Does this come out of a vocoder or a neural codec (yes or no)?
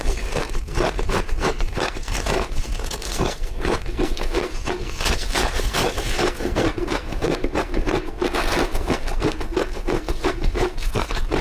yes